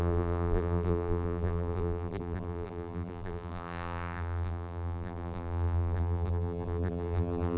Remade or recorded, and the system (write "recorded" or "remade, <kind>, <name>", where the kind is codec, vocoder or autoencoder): remade, vocoder, BigVGAN v2